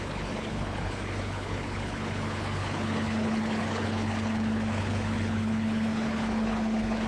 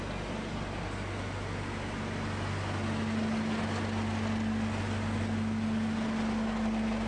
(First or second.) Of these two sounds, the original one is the second